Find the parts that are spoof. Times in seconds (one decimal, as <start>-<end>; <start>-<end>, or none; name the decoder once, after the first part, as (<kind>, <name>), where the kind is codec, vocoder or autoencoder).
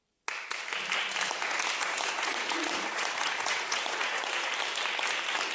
1.8-4.5 (vocoder, Vocos)